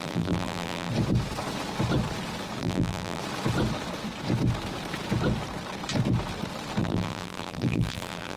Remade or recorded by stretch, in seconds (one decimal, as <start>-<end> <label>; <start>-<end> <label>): 0.0-0.9 remade; 0.9-2.6 recorded; 2.6-3.2 remade; 3.2-6.8 recorded; 6.8-8.4 remade